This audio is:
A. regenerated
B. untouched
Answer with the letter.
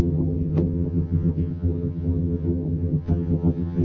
A